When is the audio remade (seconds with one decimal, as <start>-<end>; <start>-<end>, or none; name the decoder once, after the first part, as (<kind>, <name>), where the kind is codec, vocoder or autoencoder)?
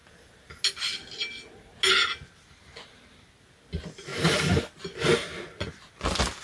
none